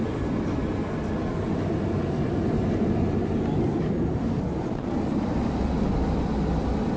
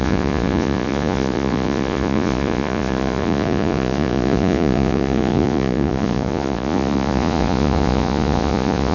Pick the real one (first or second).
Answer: first